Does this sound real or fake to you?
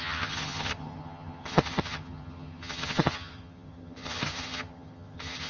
fake